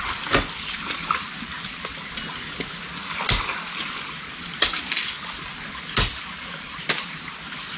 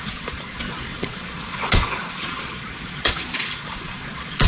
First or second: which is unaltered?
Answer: first